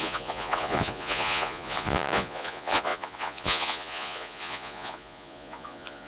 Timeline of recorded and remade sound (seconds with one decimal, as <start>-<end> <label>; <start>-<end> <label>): 0.0-6.1 remade